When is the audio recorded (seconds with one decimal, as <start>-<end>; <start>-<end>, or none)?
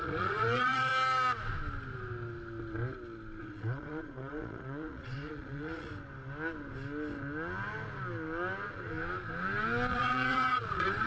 0.9-3.4; 5.9-9.9